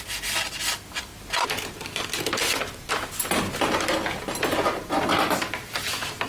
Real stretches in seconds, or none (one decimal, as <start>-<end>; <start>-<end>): 1.1-4.9